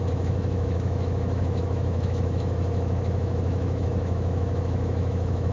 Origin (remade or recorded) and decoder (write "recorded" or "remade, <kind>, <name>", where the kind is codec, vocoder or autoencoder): remade, autoencoder, DAC-VAE